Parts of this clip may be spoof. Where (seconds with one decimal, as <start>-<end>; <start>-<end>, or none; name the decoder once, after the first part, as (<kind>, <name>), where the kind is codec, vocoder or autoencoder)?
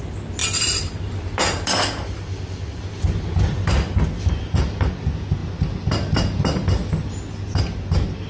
0.4-4.9 (vocoder, BigVGAN v2)